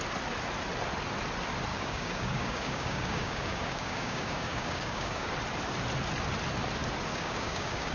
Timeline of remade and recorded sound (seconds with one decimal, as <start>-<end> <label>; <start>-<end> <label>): 0.0-1.7 recorded; 1.7-5.3 remade; 5.3-7.1 recorded; 7.1-7.9 remade